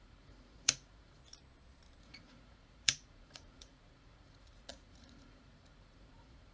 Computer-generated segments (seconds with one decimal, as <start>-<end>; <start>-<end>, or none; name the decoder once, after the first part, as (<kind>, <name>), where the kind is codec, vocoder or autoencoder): 0.0-1.2 (vocoder, Vocos); 2.0-6.5